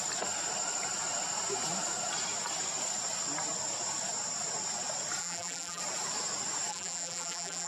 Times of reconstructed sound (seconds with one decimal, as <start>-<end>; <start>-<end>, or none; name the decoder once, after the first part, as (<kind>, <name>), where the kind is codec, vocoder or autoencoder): 5.2-5.8 (vocoder, BigVGAN v2); 6.7-7.7